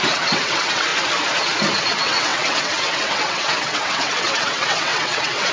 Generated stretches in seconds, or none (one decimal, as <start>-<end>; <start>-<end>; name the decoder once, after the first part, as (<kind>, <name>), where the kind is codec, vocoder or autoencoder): 0.0-0.9 (vocoder, WaveNeXt); 1.8-5.5